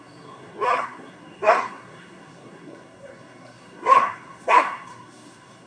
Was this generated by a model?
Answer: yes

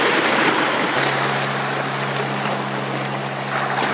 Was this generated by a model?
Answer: no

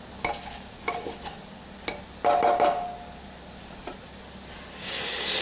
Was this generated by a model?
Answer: no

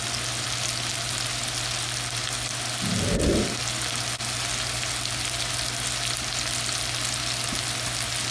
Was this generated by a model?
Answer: no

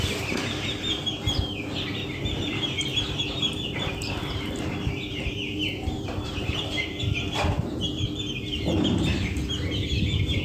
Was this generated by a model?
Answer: yes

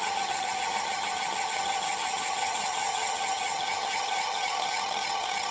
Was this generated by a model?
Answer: yes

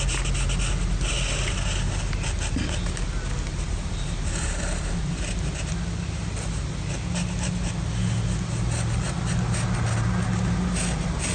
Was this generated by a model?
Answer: no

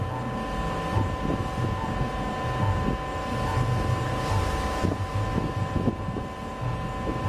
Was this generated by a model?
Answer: no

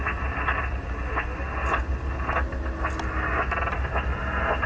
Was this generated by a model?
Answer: no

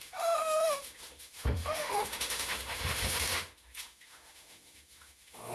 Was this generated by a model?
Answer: yes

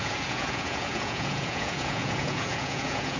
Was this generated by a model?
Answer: yes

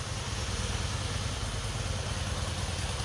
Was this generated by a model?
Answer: no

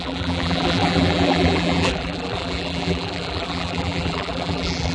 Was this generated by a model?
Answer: yes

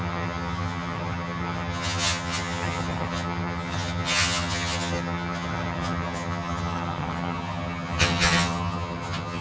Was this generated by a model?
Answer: yes